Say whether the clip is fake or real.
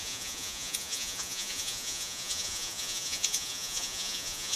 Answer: fake